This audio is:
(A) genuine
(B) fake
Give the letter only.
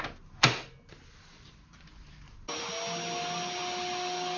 A